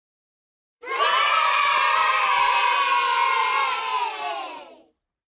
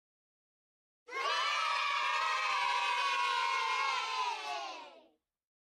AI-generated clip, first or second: first